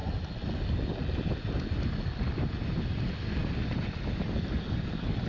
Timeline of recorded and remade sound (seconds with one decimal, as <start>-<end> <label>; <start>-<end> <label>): 0.0-5.3 recorded